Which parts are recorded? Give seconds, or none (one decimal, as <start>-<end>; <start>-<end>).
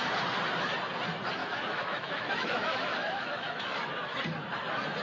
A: 0.0-1.4; 3.9-5.0